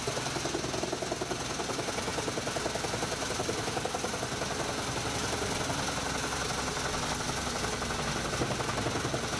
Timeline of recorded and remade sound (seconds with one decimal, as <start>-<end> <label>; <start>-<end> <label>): 0.0-9.4 recorded